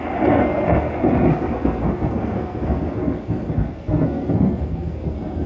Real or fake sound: fake